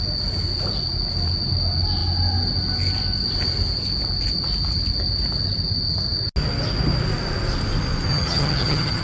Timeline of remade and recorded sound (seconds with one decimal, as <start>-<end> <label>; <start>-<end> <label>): 0.0-8.1 recorded; 8.1-9.0 remade